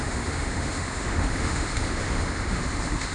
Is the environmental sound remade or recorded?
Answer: remade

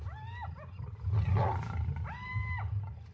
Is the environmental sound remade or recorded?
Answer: recorded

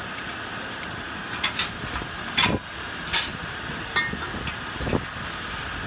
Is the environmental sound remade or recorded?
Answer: recorded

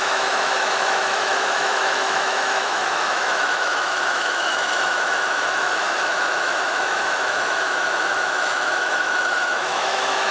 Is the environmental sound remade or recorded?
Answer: remade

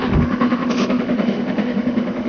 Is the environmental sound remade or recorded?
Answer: remade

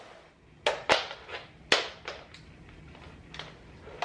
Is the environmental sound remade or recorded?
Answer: recorded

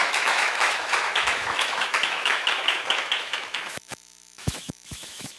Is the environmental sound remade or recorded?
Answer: remade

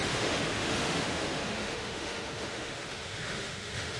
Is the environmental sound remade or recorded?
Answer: remade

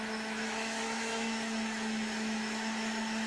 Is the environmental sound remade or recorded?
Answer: remade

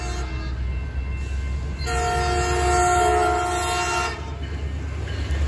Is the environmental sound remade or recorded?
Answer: recorded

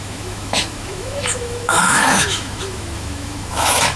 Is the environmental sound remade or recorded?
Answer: remade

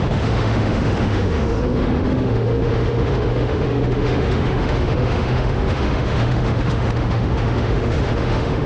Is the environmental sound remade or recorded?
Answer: remade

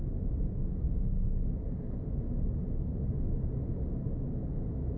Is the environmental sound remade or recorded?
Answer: recorded